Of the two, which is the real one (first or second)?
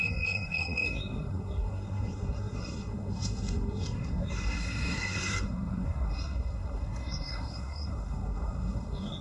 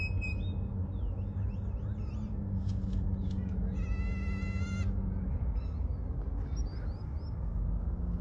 second